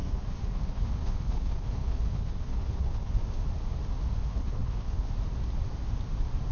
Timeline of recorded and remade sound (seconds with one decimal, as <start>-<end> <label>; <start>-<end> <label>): 0.0-3.2 remade; 3.2-4.3 recorded; 4.3-5.1 remade; 5.1-6.5 recorded